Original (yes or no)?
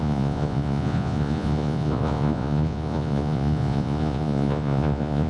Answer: no